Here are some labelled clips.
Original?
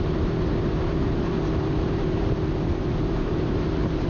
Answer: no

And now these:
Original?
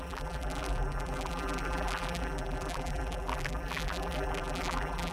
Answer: no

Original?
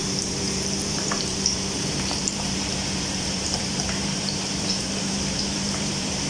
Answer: no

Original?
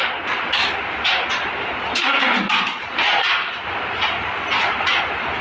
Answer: yes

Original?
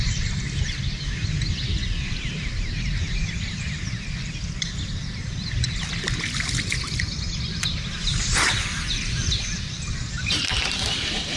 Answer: no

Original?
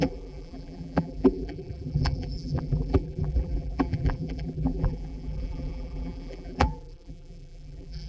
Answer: no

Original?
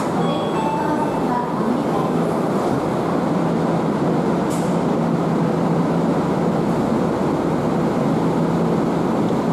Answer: yes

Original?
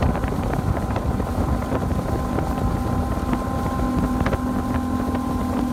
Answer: yes